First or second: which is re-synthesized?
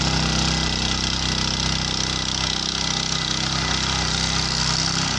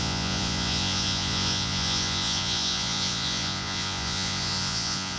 second